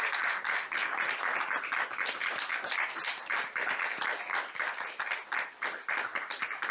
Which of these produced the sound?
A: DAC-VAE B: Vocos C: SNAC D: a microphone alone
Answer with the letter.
D